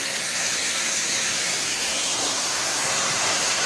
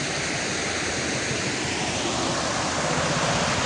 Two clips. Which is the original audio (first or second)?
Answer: second